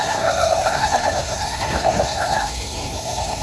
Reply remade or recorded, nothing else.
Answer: remade